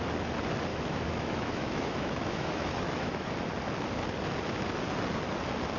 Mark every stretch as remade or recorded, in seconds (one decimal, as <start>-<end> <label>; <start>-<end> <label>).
0.0-0.7 recorded; 0.7-3.3 remade; 3.3-5.8 recorded